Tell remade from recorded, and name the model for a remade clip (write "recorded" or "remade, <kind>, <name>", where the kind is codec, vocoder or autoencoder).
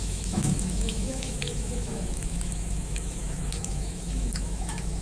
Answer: remade, autoencoder, DAC-VAE